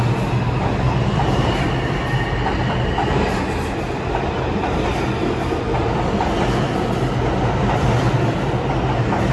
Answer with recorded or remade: recorded